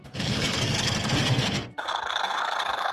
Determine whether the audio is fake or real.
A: fake